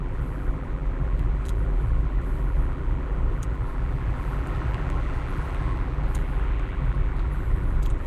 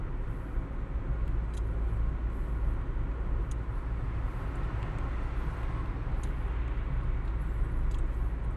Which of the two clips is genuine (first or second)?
second